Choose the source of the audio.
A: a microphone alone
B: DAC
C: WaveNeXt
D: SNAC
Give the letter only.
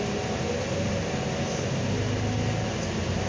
A